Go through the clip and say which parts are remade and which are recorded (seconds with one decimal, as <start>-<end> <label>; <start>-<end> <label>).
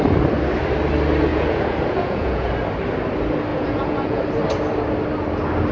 0.0-1.3 recorded; 1.3-2.5 remade; 2.5-3.5 recorded; 3.5-4.2 remade; 4.2-5.7 recorded